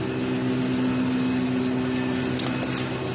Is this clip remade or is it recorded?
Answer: recorded